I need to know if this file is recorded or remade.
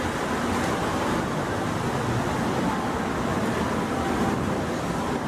recorded